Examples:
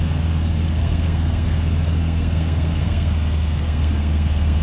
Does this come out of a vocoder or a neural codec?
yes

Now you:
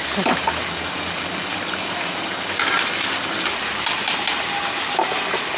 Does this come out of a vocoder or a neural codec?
no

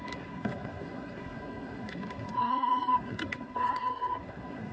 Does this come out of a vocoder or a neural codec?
yes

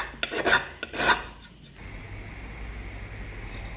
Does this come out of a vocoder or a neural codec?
no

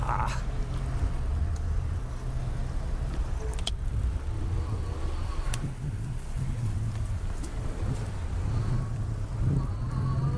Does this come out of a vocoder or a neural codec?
no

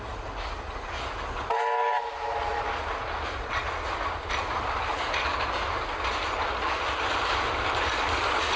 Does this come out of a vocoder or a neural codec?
no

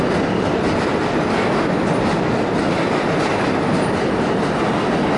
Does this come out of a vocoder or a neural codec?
no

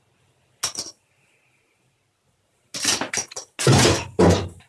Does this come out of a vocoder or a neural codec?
no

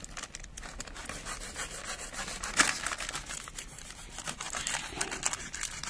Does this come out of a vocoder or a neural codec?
no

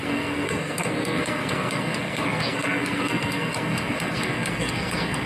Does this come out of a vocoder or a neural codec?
yes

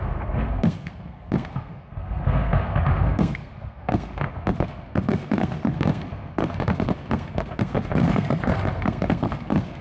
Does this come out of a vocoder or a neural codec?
yes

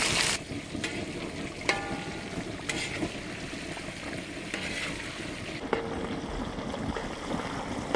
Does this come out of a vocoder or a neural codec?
no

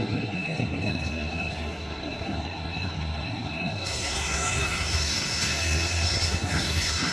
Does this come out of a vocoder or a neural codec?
yes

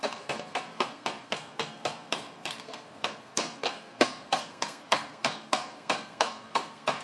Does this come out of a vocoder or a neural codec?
yes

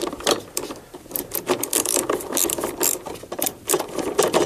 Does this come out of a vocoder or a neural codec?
no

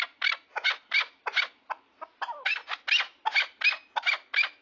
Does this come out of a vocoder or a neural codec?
no